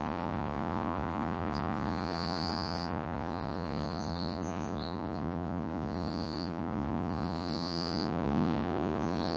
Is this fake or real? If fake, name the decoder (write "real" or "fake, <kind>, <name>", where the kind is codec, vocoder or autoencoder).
fake, vocoder, Vocos